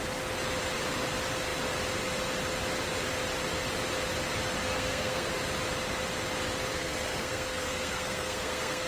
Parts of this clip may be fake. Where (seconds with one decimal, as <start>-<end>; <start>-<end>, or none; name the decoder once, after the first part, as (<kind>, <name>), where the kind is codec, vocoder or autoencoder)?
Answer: 4.6-5.3 (codec, SNAC); 6.7-8.9